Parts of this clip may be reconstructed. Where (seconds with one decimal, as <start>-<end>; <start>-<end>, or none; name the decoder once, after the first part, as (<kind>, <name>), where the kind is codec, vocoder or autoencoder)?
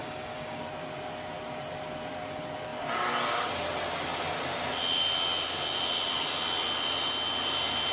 0.0-0.6 (codec, DAC)